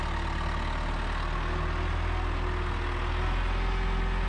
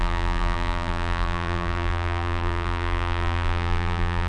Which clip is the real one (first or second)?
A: first